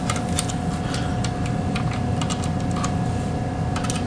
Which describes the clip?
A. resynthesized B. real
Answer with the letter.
B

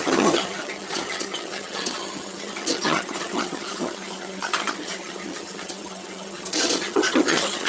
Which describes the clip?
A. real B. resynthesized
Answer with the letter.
B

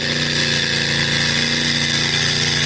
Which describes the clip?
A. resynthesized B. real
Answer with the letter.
B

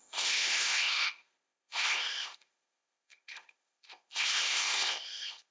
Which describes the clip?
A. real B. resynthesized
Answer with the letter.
B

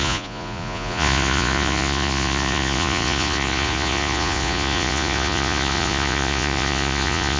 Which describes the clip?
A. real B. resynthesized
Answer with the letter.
B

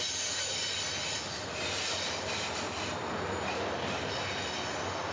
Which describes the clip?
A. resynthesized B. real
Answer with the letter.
B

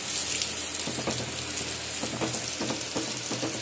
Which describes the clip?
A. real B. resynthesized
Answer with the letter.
A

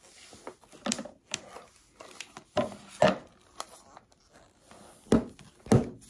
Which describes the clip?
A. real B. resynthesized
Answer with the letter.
A